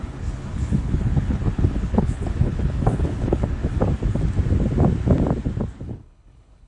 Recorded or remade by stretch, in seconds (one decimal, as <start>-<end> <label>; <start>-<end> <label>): 0.0-3.6 remade; 3.6-5.8 recorded; 5.8-6.7 remade